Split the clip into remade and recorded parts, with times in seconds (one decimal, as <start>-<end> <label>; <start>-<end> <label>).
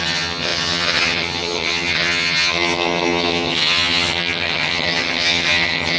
0.0-6.0 remade